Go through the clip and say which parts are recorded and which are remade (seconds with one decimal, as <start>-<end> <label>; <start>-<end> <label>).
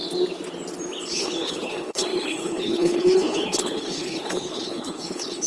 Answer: 0.0-1.0 recorded; 1.0-5.5 remade